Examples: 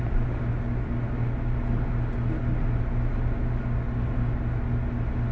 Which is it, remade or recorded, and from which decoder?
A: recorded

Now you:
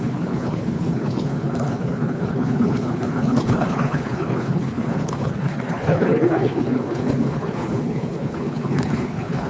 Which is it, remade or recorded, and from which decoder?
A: remade, codec, HILCodec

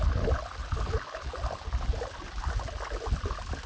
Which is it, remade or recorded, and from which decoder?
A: recorded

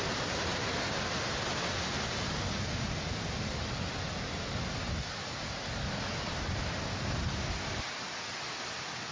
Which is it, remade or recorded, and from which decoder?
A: recorded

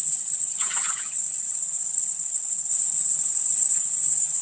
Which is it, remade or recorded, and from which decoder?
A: remade, vocoder, HiFi-GAN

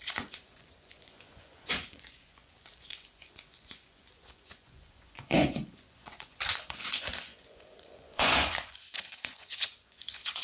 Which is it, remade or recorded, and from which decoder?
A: remade, vocoder, Vocos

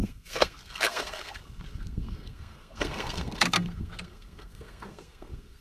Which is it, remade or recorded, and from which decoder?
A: remade, codec, SNAC